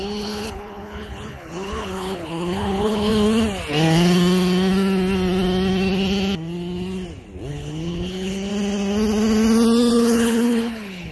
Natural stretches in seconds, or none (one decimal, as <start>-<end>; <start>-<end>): 3.1-7.5; 8.5-9.9